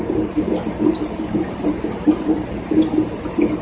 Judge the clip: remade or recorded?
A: remade